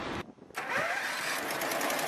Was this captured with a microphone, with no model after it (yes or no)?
yes